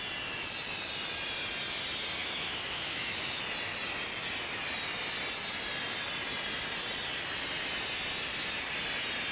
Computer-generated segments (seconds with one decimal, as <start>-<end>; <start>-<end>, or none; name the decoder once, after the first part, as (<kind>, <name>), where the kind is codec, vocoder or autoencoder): 2.2-3.4 (autoencoder, DAC-VAE)